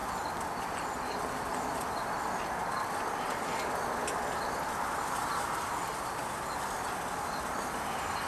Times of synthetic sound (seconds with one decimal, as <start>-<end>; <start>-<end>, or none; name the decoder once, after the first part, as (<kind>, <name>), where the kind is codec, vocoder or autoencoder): none